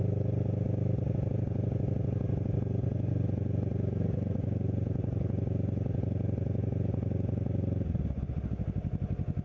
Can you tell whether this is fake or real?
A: real